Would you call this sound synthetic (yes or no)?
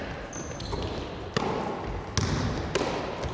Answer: no